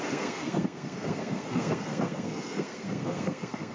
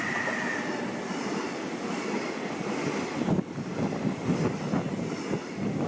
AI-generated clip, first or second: first